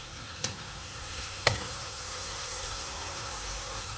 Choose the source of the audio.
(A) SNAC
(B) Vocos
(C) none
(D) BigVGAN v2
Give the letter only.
A